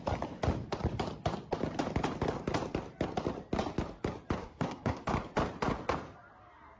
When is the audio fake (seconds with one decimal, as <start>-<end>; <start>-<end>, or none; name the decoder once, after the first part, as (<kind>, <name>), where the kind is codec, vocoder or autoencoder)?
4.4-5.1 (codec, SNAC)